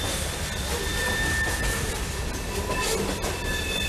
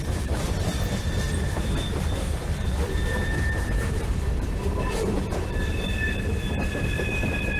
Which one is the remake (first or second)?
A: second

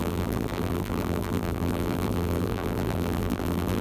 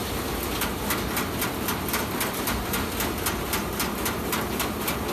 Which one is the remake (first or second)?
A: first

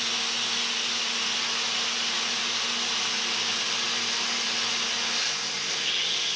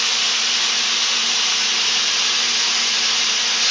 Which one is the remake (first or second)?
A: second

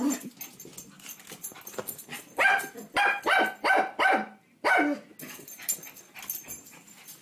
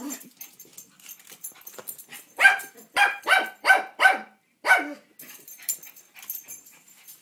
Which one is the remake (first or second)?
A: second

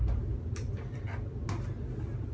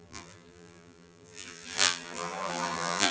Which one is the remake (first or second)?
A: second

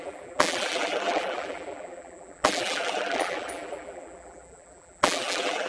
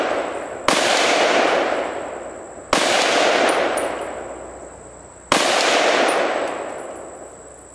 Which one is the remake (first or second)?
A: first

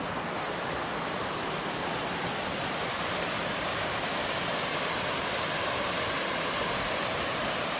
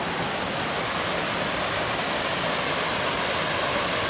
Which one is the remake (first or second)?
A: first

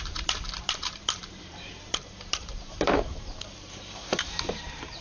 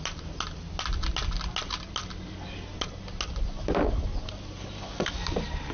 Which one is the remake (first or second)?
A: first